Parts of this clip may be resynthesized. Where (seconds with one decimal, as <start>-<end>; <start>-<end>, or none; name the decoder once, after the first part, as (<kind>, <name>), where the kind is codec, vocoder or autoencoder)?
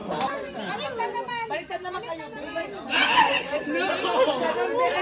3.0-3.9 (vocoder, BigVGAN v2)